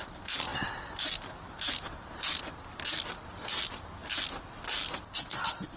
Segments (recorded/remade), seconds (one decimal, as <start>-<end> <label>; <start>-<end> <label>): 0.0-5.8 recorded

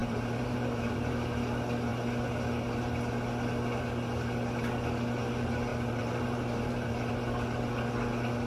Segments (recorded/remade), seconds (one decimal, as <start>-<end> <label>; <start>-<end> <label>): 0.0-1.1 remade; 1.1-5.7 recorded; 5.7-7.1 remade; 7.1-8.5 recorded

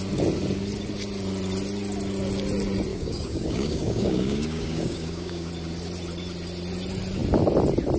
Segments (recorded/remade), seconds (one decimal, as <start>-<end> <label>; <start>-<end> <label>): 0.0-2.9 recorded; 2.9-5.5 remade; 5.5-8.0 recorded

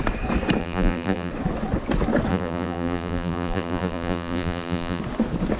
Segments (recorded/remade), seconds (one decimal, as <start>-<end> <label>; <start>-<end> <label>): 0.0-0.6 recorded; 0.6-1.3 remade; 1.3-2.3 recorded; 2.3-5.0 remade; 5.0-5.6 recorded

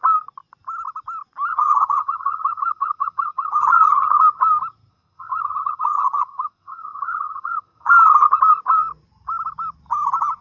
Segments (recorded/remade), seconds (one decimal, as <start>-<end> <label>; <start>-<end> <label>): 0.0-1.5 recorded; 1.5-4.2 remade; 4.2-4.9 recorded; 4.9-7.9 remade; 7.9-10.4 recorded

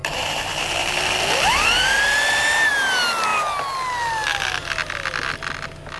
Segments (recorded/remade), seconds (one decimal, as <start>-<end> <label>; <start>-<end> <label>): 0.0-2.7 remade; 2.7-6.0 recorded

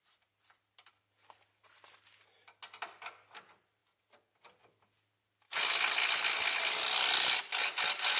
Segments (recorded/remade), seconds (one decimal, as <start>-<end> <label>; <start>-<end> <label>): 0.0-8.2 recorded

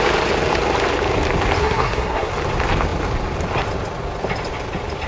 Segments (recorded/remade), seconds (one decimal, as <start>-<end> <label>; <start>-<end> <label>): 0.0-1.6 recorded; 1.6-2.3 remade; 2.3-5.1 recorded